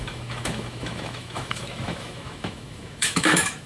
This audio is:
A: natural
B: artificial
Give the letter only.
B